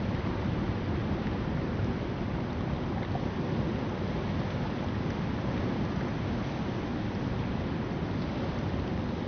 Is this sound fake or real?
real